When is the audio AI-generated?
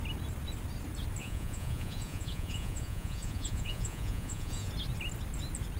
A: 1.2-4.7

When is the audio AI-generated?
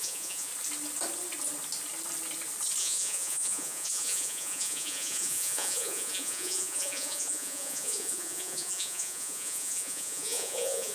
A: 0.0-0.5; 2.8-10.9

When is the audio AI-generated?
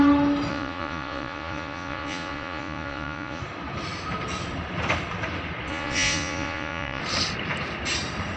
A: 0.5-3.4; 5.7-7.0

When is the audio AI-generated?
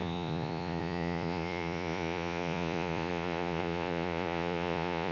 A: 0.0-5.1